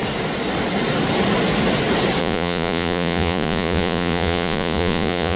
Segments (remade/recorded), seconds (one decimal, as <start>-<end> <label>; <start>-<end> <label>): 0.0-2.2 recorded; 2.2-5.4 remade